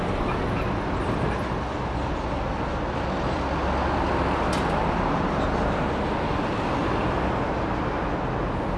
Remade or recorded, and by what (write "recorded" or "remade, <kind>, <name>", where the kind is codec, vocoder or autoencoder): recorded